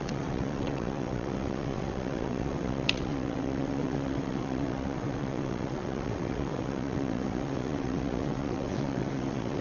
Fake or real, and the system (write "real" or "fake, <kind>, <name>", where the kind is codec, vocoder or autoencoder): fake, vocoder, WaveNeXt